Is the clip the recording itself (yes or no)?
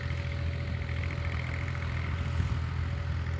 yes